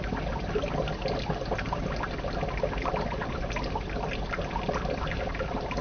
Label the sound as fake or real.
real